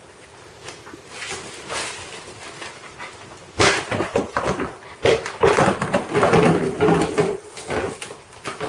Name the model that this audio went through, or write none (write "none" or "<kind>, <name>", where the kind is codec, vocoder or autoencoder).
none